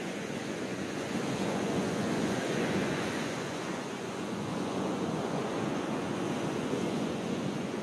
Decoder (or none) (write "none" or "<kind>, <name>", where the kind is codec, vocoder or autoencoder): vocoder, Vocos